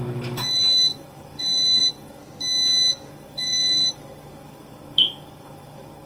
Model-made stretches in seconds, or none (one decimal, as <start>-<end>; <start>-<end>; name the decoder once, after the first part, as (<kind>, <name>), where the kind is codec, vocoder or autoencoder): 0.0-2.2 (codec, DAC); 3.1-6.1